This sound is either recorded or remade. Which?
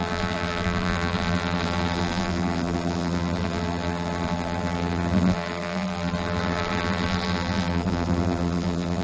remade